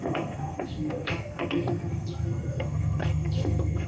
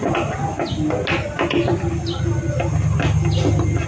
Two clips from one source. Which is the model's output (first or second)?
first